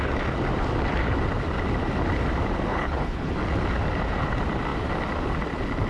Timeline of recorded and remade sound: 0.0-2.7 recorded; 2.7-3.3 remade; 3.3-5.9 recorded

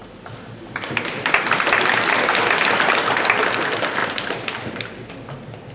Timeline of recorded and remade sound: 0.0-5.7 recorded

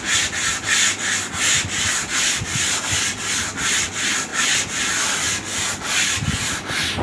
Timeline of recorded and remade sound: 0.0-7.0 recorded